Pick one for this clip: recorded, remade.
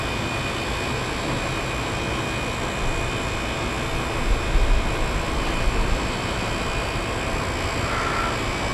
recorded